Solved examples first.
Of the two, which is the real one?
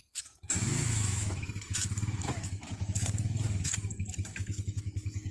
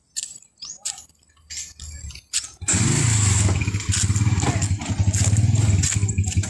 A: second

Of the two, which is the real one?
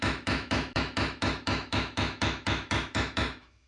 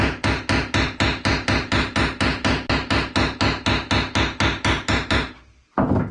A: second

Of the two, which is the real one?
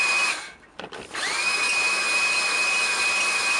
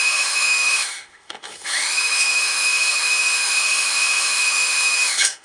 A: first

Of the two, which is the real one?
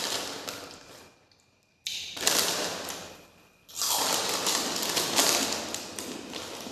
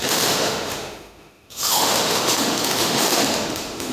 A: first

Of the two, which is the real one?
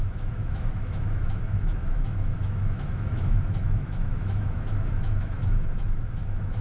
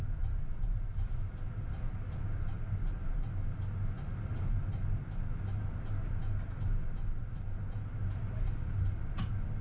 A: second